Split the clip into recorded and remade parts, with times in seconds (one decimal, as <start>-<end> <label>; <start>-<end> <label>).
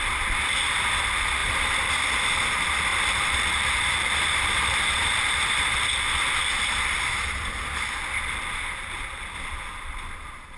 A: 0.0-1.4 recorded; 1.4-1.9 remade; 1.9-2.9 recorded; 2.9-5.7 remade; 5.7-10.6 recorded